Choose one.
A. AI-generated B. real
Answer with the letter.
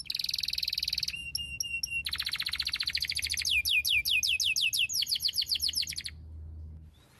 B